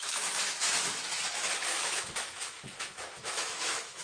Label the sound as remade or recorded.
remade